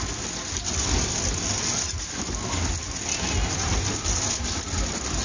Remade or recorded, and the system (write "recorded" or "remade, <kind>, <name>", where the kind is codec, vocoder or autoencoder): recorded